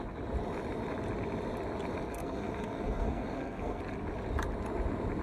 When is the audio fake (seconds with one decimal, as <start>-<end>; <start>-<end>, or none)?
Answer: 2.1-3.8